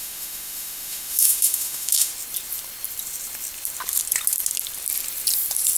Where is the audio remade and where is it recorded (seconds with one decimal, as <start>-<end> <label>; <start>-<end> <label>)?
0.0-2.1 remade; 2.1-5.8 recorded